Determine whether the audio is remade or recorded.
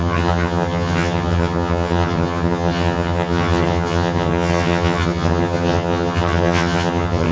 remade